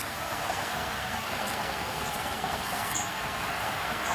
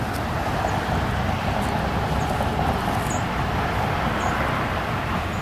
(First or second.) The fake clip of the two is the first